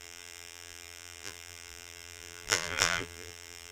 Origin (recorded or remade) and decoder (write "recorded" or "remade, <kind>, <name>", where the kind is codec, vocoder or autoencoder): remade, vocoder, BigVGAN v2